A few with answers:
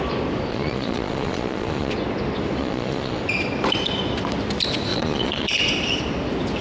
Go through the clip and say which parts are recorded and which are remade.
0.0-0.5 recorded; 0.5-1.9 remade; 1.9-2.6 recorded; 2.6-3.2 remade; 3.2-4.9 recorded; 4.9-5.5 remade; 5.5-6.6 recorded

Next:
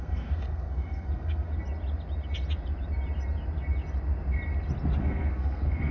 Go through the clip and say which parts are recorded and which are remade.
0.0-1.5 remade; 1.5-5.0 recorded; 5.0-5.9 remade

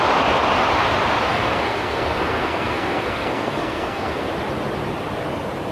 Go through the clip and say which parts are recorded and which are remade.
0.0-1.3 recorded; 1.3-4.3 remade; 4.3-5.7 recorded